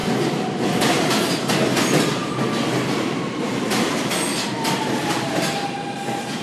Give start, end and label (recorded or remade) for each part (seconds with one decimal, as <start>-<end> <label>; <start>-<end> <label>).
0.0-6.4 recorded